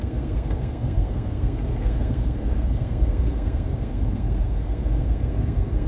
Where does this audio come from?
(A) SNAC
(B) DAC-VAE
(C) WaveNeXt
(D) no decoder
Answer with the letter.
A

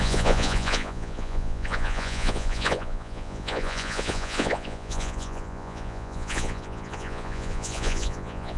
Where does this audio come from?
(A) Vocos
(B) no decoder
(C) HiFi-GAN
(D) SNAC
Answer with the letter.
A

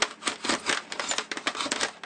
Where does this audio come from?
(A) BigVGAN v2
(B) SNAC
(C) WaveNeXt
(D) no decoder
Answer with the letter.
D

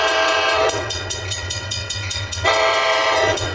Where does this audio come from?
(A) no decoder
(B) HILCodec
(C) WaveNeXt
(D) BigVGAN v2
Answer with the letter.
C